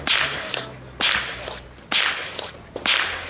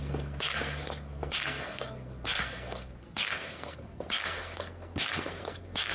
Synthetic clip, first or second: second